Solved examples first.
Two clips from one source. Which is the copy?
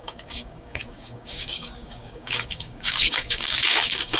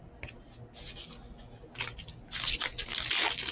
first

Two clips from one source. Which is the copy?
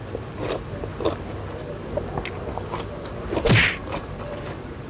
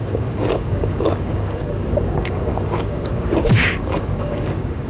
second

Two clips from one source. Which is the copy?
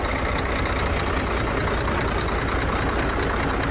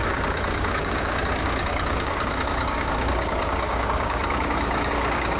second